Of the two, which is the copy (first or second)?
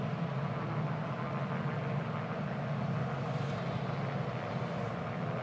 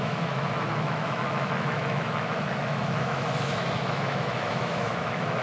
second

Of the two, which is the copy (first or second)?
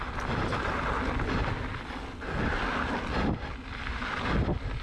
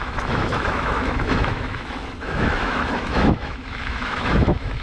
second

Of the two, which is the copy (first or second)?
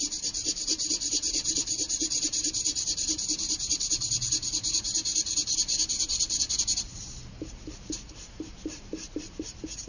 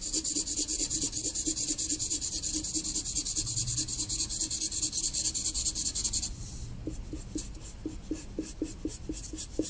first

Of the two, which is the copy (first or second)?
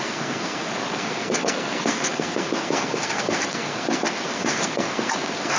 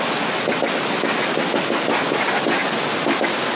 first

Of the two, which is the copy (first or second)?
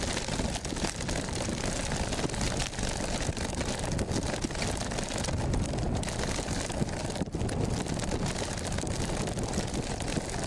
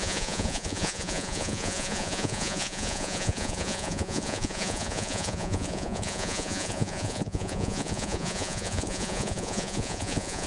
second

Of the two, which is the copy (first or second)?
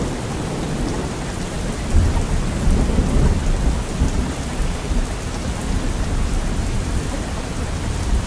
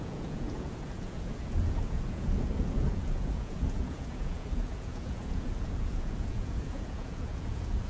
second